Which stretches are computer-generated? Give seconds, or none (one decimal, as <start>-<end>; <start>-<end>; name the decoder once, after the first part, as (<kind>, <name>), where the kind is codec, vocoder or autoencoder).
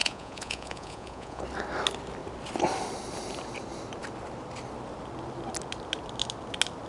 0.0-1.4 (vocoder, Vocos)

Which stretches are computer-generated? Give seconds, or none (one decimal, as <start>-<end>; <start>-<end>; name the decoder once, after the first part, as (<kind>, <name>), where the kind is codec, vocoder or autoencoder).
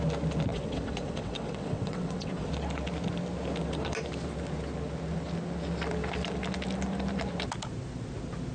0.5-2.5 (vocoder, WaveNeXt)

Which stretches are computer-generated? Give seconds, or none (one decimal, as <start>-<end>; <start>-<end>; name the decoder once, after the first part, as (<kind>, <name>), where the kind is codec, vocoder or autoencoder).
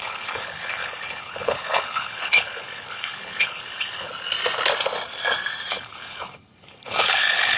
0.0-4.1 (codec, HILCodec); 5.7-7.6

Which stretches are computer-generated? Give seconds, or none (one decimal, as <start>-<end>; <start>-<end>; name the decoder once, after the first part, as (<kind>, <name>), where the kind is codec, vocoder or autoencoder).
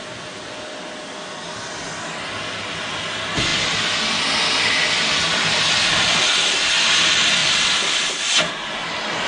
7.4-8.5 (vocoder, BigVGAN v2)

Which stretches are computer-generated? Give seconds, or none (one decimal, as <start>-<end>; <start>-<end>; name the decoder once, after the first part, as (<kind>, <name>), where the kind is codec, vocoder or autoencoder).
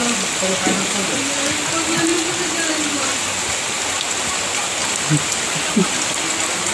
none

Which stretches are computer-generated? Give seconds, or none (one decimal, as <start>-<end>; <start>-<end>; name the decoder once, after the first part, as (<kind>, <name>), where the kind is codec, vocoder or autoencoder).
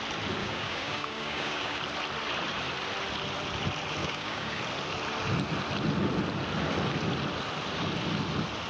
0.4-1.8 (codec, DAC); 4.0-4.6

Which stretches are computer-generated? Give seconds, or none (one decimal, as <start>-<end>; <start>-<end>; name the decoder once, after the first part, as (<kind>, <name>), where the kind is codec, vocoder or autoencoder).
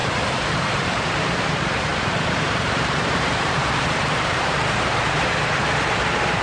0.0-1.5 (vocoder, BigVGAN v2); 1.9-5.7